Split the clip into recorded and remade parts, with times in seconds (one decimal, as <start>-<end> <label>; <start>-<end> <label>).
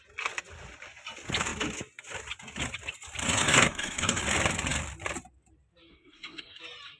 0.0-3.2 recorded; 3.2-4.2 remade; 4.2-5.9 recorded; 5.9-6.6 remade; 6.6-7.0 recorded